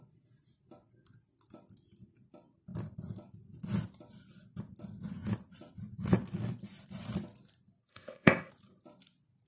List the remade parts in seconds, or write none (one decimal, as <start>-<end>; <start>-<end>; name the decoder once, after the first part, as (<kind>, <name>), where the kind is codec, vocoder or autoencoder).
7.9-8.5 (codec, ZipCodec)